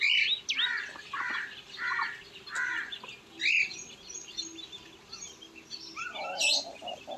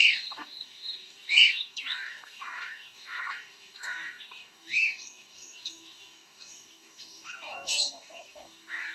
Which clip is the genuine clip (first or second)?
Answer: first